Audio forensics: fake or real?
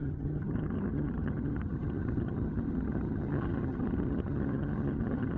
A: fake